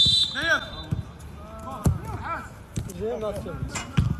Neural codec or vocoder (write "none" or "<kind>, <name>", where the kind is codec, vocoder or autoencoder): none